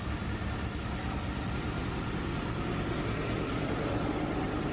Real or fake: real